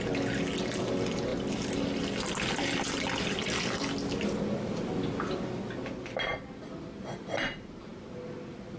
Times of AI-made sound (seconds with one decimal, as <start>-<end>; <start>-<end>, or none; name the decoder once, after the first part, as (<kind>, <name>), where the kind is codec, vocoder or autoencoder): none